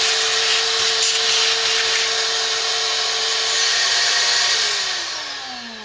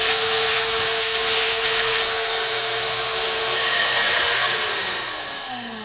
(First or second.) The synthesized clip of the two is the second